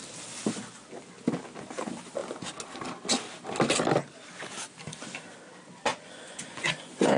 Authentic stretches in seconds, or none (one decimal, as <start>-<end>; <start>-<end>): 0.0-5.9